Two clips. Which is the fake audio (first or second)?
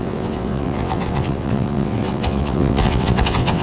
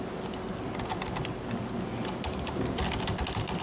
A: first